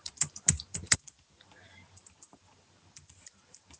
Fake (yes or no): yes